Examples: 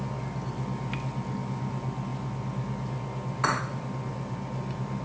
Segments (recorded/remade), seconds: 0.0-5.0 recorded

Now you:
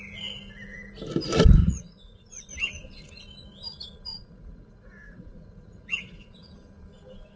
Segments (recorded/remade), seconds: 0.0-1.6 recorded; 1.6-2.5 remade; 2.5-4.1 recorded; 4.1-6.4 remade; 6.4-7.4 recorded

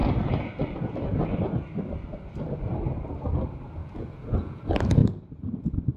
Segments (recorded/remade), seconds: 0.0-3.8 recorded; 3.8-4.6 remade; 4.6-6.0 recorded

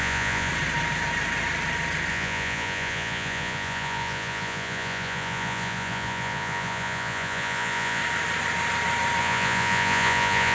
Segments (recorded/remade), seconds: 0.0-0.5 remade; 0.5-2.1 recorded; 2.1-8.0 remade; 8.0-9.2 recorded; 9.2-10.5 remade

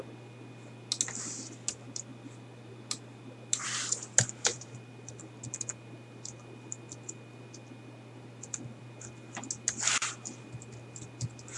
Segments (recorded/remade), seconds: 0.0-11.6 recorded

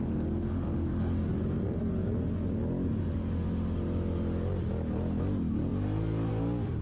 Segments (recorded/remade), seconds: 0.0-6.8 recorded